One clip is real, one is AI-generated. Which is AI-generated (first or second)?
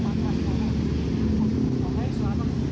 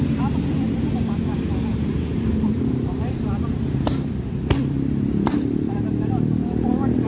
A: second